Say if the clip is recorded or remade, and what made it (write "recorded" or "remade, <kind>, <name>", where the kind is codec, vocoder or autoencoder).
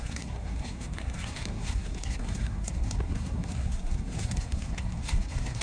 remade, codec, SNAC